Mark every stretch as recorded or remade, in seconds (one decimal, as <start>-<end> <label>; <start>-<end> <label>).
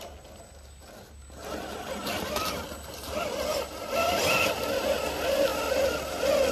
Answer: 0.0-6.5 recorded